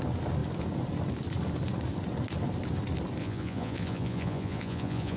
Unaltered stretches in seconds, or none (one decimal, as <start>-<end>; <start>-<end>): 0.0-3.2